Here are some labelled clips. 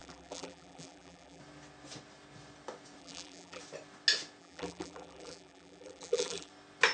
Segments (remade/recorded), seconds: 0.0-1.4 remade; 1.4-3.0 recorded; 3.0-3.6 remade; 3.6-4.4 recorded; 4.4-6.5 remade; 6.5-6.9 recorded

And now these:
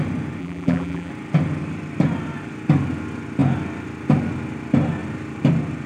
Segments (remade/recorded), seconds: 0.0-0.4 recorded; 0.4-1.1 remade; 1.1-5.9 recorded

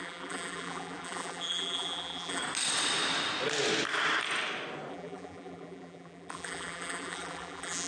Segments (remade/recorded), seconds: 0.0-2.4 remade; 2.4-4.9 recorded; 4.9-7.9 remade

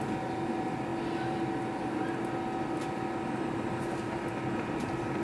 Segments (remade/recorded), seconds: 0.0-5.2 recorded

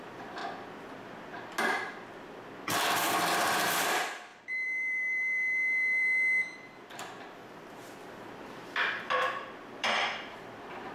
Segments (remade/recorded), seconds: 0.0-0.4 remade; 0.4-3.1 recorded; 3.1-10.9 remade

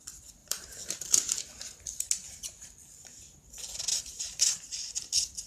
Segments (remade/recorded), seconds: 0.0-0.4 recorded; 0.4-1.4 remade; 1.4-3.9 recorded; 3.9-4.6 remade; 4.6-5.5 recorded

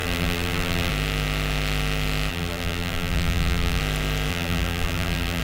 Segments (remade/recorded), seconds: 0.0-0.9 remade; 0.9-2.3 recorded; 2.3-3.8 remade; 3.8-4.3 recorded; 4.3-5.4 remade

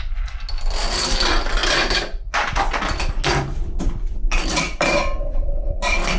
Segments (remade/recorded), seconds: 0.0-4.4 recorded; 4.4-5.6 remade; 5.6-6.2 recorded